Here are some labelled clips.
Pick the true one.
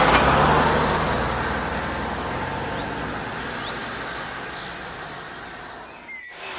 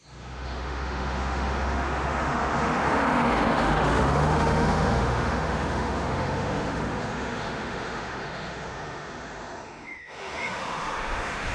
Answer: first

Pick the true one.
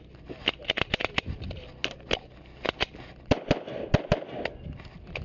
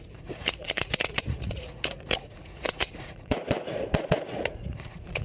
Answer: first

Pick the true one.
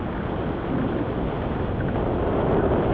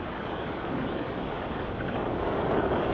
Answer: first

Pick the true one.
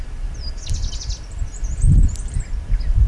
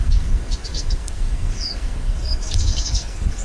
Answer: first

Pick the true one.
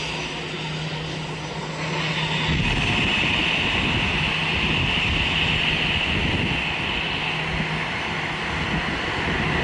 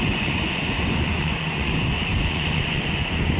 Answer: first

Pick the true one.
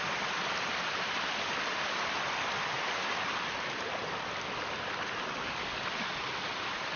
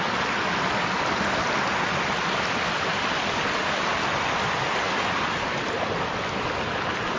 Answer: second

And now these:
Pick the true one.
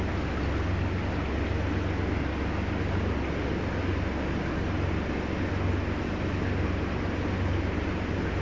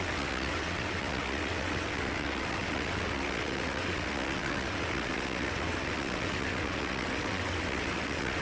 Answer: first